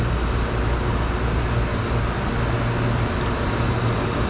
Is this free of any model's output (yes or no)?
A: yes